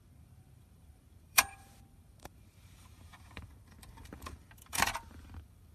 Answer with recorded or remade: remade